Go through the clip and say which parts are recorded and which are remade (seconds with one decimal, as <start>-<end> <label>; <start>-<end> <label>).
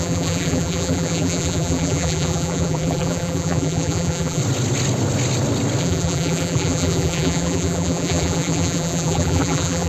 0.0-4.4 remade; 4.4-5.8 recorded; 5.8-9.9 remade